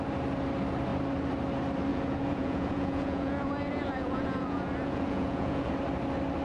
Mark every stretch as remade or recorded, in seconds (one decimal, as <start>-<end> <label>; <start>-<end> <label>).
0.0-1.9 recorded; 1.9-5.7 remade; 5.7-6.4 recorded